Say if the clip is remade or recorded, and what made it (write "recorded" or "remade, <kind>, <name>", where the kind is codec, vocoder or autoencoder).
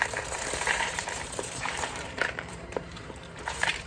remade, vocoder, BigVGAN v2